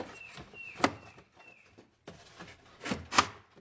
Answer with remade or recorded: recorded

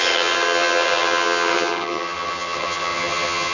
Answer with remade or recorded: remade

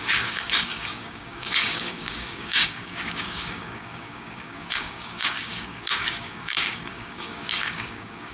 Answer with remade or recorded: remade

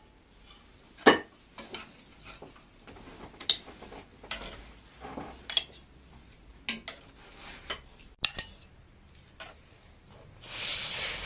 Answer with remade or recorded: recorded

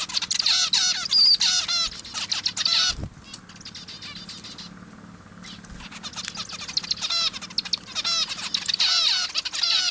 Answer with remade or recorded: recorded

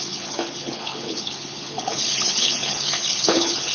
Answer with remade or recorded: remade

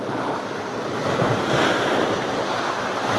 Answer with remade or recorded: recorded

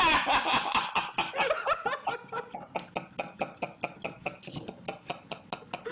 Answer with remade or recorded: recorded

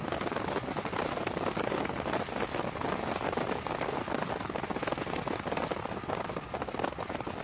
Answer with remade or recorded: recorded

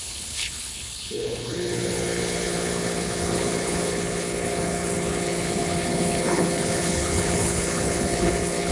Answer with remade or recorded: remade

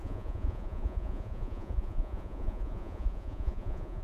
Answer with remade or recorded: remade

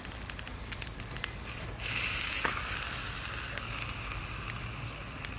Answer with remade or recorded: recorded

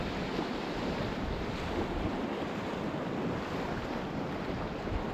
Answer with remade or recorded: remade